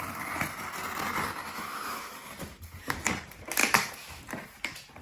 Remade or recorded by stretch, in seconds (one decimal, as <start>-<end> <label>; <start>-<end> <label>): 0.0-1.4 recorded; 1.4-2.3 remade; 2.3-3.6 recorded; 3.6-4.2 remade; 4.2-5.0 recorded